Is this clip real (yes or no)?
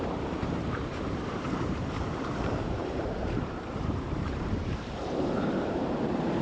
no